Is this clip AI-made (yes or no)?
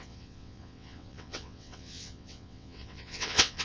yes